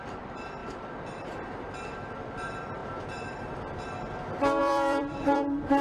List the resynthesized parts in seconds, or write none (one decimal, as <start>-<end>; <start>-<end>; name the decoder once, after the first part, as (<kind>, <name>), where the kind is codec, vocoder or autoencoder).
0.0-2.8 (vocoder, BigVGAN v2); 4.6-5.8